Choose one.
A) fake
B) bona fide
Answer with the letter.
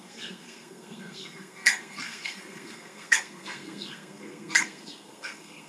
A